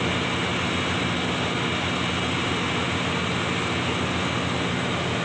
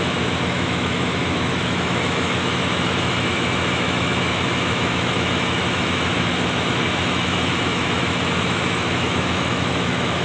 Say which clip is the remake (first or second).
second